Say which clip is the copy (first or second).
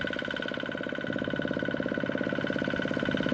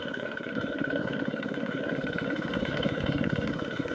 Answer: second